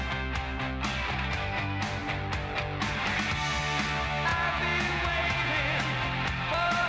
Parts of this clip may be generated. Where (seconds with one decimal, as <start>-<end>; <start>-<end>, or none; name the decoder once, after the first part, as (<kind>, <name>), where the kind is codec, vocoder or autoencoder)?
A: 4.3-5.8 (vocoder, Vocos)

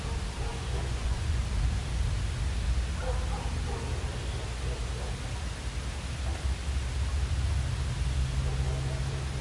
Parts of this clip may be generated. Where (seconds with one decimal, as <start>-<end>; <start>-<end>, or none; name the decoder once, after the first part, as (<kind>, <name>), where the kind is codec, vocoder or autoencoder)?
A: 0.5-1.4 (vocoder, Vocos)

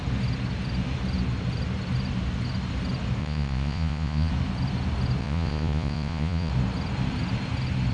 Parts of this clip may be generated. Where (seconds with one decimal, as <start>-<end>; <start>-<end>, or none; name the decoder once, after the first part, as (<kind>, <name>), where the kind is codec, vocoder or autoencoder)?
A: 3.2-4.3 (vocoder, Vocos); 5.2-6.5

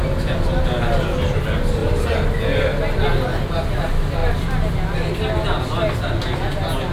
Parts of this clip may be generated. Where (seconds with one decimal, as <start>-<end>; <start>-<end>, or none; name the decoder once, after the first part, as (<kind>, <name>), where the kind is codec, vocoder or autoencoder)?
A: none

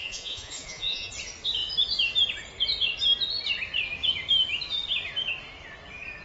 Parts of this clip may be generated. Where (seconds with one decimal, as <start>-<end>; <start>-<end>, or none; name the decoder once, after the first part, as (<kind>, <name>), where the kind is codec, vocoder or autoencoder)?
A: 0.0-1.1 (vocoder, Vocos)